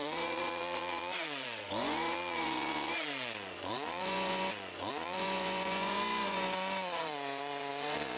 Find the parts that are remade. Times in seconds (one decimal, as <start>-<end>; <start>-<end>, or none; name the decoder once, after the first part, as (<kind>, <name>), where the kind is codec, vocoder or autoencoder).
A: 0.0-8.2 (vocoder, Vocos)

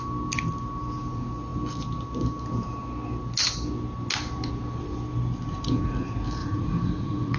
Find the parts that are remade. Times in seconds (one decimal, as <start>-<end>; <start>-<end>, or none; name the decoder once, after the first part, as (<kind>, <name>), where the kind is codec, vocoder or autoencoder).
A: 6.4-7.4 (vocoder, Vocos)

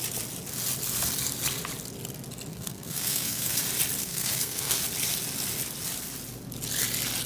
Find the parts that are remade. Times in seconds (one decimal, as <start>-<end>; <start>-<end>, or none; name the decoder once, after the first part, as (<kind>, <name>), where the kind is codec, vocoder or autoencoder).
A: 2.5-3.6 (codec, SNAC); 4.0-4.8

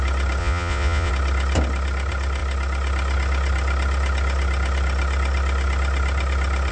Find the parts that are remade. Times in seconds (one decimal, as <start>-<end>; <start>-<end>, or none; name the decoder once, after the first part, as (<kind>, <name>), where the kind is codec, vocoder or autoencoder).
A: 0.4-1.1 (vocoder, Vocos)

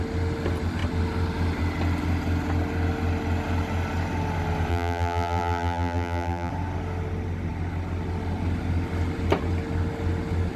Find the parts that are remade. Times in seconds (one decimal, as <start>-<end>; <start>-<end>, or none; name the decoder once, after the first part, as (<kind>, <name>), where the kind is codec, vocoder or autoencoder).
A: 4.7-6.5 (vocoder, BigVGAN v2)

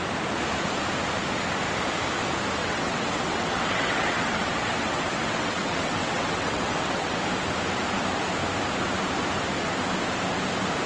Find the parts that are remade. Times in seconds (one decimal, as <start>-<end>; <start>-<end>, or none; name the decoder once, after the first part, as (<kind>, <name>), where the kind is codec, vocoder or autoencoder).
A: 2.6-7.2 (vocoder, WaveNeXt)